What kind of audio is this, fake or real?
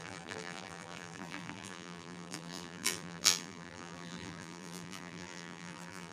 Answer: fake